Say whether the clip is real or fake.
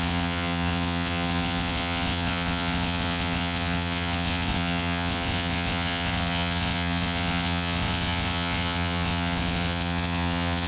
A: fake